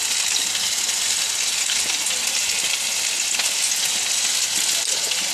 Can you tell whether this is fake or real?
real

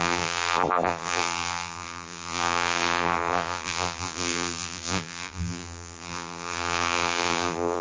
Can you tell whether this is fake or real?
fake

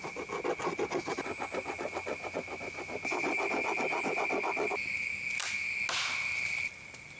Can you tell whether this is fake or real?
real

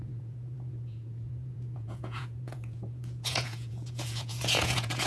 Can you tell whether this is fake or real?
fake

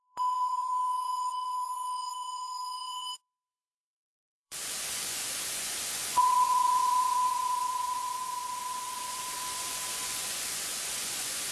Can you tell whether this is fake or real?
fake